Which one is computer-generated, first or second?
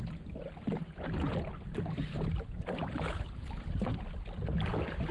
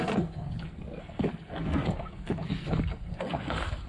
second